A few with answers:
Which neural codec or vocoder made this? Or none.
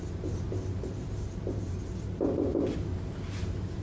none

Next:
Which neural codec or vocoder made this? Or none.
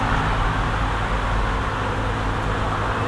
none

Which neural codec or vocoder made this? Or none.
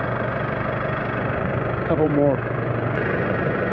vocoder, Vocos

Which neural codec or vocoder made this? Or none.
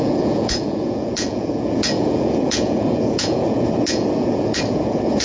vocoder, Vocos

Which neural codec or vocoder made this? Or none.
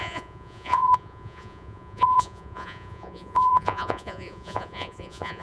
vocoder, Vocos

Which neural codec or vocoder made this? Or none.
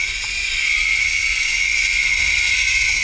vocoder, Vocos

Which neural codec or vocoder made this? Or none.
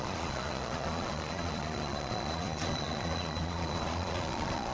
vocoder, Vocos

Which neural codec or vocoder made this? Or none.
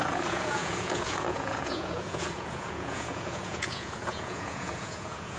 vocoder, Vocos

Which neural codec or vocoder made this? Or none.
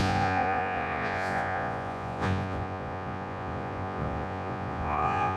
vocoder, Vocos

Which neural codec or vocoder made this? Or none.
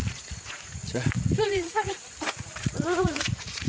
vocoder, Vocos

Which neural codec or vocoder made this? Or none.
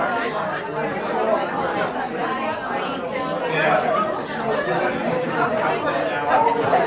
none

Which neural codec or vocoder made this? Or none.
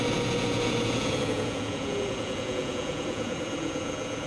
vocoder, Vocos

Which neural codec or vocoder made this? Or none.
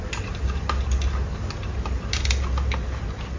none